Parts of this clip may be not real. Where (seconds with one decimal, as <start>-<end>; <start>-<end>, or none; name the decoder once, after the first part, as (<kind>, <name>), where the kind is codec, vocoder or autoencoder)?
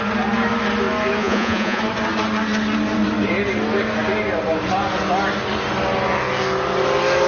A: 1.2-1.8 (vocoder, Vocos)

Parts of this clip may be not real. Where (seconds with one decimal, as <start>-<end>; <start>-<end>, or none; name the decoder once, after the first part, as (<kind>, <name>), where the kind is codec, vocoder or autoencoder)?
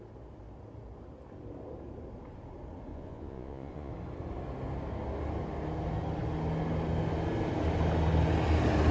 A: 2.9-3.9 (vocoder, Vocos)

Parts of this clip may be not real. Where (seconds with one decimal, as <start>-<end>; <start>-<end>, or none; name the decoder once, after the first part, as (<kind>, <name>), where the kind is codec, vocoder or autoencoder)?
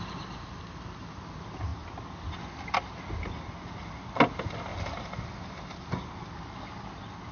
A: none